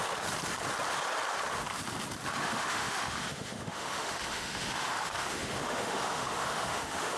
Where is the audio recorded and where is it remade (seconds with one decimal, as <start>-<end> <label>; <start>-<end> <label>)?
0.0-2.3 recorded; 2.3-7.2 remade